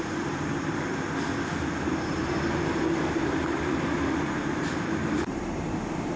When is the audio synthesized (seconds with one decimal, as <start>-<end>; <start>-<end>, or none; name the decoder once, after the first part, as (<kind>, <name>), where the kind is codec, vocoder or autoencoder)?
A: 0.0-0.9 (vocoder, BigVGAN v2); 1.5-6.2